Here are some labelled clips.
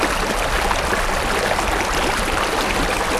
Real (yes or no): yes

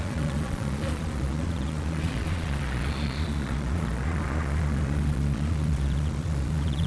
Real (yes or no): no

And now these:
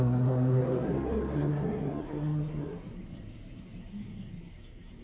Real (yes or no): no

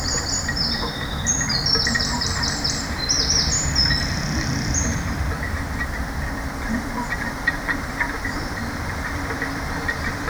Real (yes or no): no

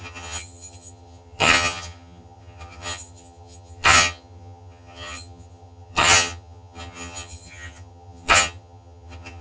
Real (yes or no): no